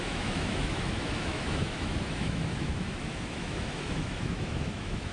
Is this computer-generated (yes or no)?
yes